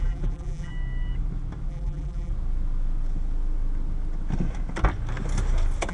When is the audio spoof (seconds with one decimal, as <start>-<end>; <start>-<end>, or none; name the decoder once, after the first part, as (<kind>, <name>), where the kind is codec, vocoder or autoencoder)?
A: 0.0-0.7 (vocoder, BigVGAN v2); 1.7-2.3